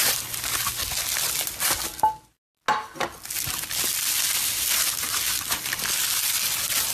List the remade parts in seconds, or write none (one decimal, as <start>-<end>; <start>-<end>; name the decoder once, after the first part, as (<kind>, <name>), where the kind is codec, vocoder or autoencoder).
none